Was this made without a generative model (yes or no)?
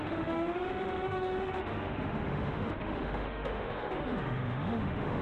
no